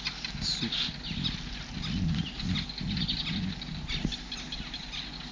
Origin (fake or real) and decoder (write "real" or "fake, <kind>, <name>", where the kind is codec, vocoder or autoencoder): real